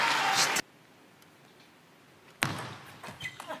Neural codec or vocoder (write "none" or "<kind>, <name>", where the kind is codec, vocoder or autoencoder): none